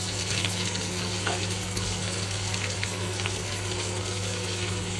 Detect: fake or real fake